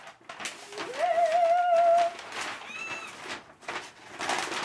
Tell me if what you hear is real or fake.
real